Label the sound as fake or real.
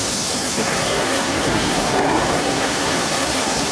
fake